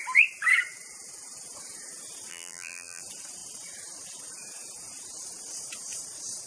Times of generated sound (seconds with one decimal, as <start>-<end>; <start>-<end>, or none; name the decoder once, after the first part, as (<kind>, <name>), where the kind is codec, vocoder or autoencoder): 2.3-3.0 (vocoder, BigVGAN v2)